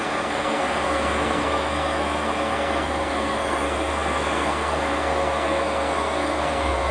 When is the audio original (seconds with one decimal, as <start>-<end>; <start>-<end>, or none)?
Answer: none

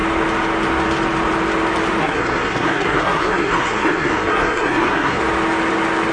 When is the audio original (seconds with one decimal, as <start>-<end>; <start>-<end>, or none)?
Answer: 0.0-2.0; 5.2-6.1

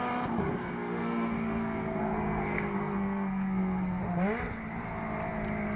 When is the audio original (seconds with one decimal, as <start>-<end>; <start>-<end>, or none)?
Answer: 0.0-0.5; 4.0-5.8